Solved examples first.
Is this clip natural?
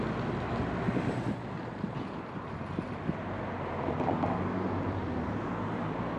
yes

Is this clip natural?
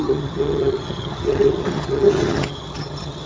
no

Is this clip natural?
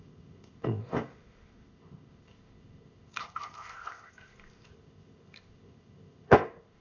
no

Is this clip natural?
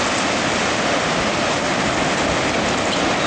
yes